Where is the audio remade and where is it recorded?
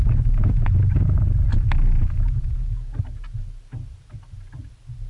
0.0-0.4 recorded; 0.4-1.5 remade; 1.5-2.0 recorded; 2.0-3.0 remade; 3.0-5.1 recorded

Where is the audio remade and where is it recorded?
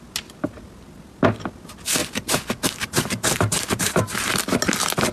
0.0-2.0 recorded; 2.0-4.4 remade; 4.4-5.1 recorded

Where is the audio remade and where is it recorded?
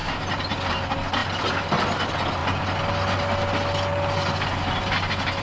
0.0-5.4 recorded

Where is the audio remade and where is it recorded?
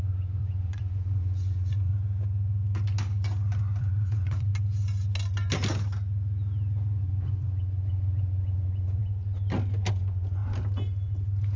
0.0-1.9 remade; 1.9-3.8 recorded; 3.8-4.5 remade; 4.5-7.0 recorded; 7.0-9.0 remade; 9.0-9.9 recorded; 9.9-10.4 remade; 10.4-11.6 recorded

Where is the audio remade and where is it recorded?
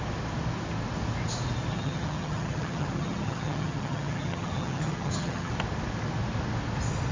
0.0-1.7 recorded; 1.7-5.5 remade; 5.5-7.1 recorded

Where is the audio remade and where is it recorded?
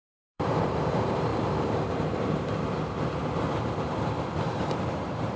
0.0-1.3 remade; 1.3-4.5 recorded; 4.5-5.4 remade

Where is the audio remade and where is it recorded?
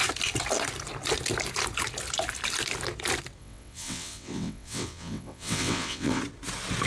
0.0-3.4 recorded; 3.4-6.2 remade; 6.2-6.9 recorded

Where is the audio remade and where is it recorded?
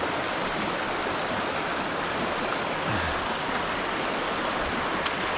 0.0-5.4 recorded